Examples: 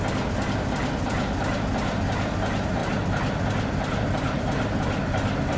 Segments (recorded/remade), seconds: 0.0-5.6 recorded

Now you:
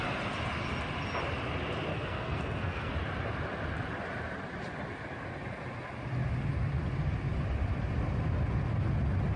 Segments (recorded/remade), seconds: 0.0-1.9 recorded; 1.9-2.9 remade; 2.9-9.4 recorded

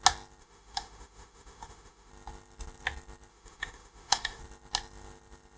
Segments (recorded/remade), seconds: 0.0-0.4 recorded; 0.4-2.1 remade; 2.1-3.3 recorded; 3.3-4.4 remade; 4.4-5.6 recorded

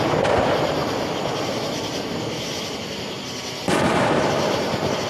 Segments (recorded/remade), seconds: 0.0-5.1 recorded

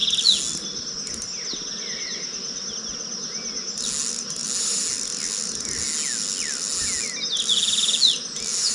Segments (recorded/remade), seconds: 0.0-8.7 recorded

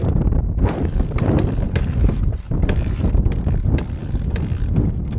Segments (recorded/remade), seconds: 0.0-3.1 remade; 3.1-5.2 recorded

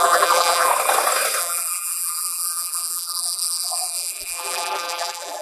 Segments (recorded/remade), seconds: 0.0-0.7 remade; 0.7-1.4 recorded; 1.4-5.4 remade